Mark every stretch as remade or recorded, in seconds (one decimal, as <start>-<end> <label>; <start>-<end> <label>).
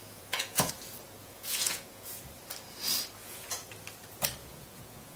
0.0-0.7 remade; 0.7-1.2 recorded; 1.2-2.2 remade; 2.2-3.2 recorded; 3.2-3.7 remade; 3.7-4.4 recorded; 4.4-5.2 remade